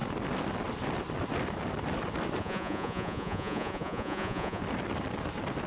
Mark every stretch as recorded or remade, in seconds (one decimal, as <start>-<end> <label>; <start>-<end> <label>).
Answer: 0.0-2.4 recorded; 2.4-4.6 remade; 4.6-5.7 recorded